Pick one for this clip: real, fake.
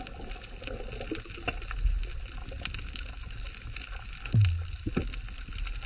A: real